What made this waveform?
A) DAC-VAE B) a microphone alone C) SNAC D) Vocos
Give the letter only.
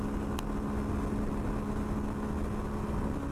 B